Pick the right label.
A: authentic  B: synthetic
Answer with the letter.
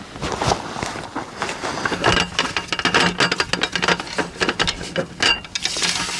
A